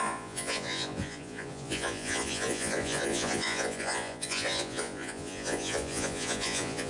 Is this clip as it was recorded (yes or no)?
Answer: no